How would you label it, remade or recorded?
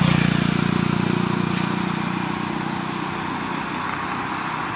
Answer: recorded